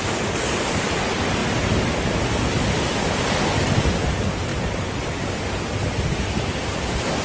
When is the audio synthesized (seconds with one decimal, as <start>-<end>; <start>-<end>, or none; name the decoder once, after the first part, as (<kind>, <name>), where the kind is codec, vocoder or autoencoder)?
none